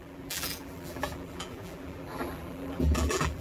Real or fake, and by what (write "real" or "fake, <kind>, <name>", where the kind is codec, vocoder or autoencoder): fake, vocoder, BigVGAN v2